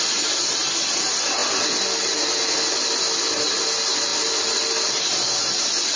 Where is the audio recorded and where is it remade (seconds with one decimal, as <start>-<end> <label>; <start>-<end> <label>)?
0.0-6.0 recorded